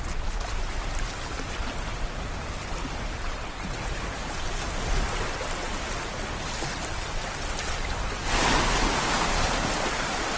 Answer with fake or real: real